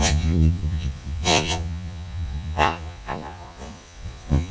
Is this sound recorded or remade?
remade